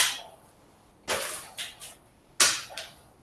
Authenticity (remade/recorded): recorded